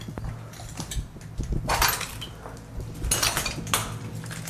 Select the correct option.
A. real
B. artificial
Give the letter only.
A